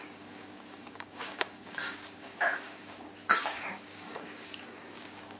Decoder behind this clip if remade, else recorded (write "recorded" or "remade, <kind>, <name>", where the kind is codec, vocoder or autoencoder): remade, codec, DAC